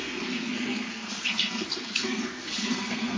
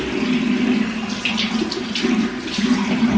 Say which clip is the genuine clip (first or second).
second